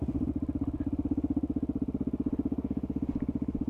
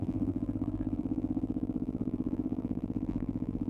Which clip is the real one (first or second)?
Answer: first